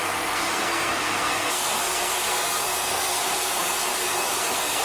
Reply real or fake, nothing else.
fake